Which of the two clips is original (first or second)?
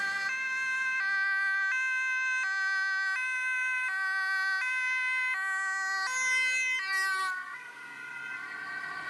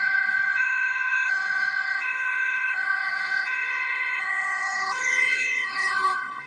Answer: first